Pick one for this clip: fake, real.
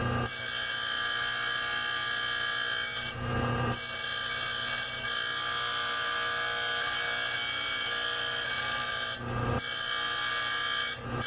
real